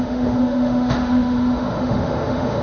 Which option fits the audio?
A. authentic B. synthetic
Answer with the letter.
B